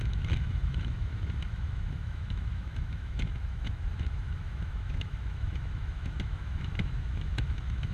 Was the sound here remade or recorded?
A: remade